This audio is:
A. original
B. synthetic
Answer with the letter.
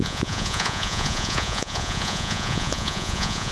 B